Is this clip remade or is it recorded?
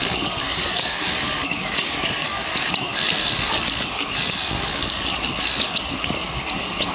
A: remade